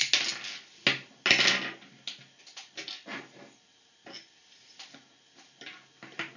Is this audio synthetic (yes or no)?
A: no